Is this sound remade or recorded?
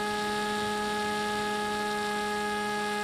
recorded